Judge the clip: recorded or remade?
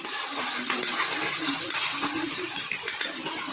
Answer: recorded